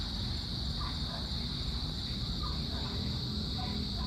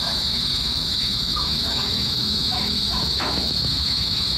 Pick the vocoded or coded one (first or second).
second